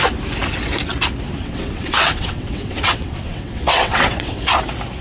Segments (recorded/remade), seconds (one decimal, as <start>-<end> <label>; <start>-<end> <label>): 0.0-1.4 recorded; 1.4-4.4 remade; 4.4-5.0 recorded